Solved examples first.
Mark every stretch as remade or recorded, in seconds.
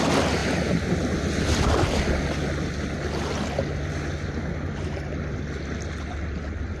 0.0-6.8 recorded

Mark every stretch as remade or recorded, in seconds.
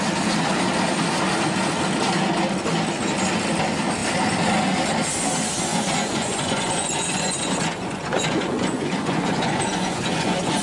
0.0-5.7 recorded; 5.7-10.6 remade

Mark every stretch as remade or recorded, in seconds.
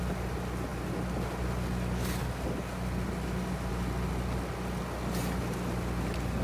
0.0-6.4 recorded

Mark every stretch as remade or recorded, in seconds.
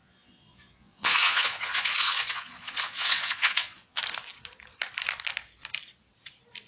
0.0-4.0 remade; 4.0-6.7 recorded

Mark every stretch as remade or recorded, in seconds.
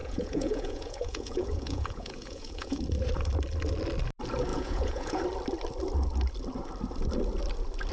0.0-2.8 remade; 2.8-4.5 recorded; 4.5-5.2 remade; 5.2-7.9 recorded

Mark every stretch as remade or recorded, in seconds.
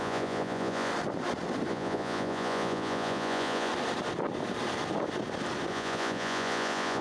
0.0-0.9 remade; 0.9-1.7 recorded; 1.7-3.7 remade; 3.7-5.7 recorded; 5.7-7.0 remade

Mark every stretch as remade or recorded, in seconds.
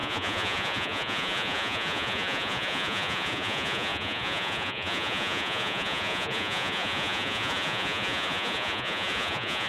0.0-9.7 remade